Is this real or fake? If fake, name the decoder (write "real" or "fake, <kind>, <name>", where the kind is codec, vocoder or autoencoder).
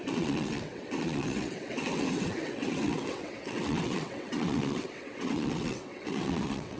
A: fake, vocoder, WaveNeXt